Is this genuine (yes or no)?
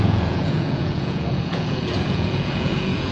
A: no